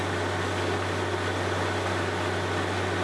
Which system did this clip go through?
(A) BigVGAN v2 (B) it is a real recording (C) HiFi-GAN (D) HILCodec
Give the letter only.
B